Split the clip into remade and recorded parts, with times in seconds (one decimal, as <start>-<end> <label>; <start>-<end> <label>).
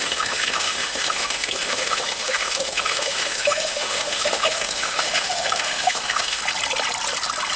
0.0-6.4 remade; 6.4-7.6 recorded